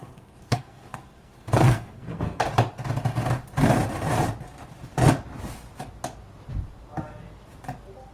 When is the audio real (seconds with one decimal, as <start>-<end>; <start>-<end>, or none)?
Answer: 2.4-8.1